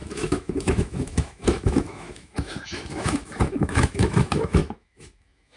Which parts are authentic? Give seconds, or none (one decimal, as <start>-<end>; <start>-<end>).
none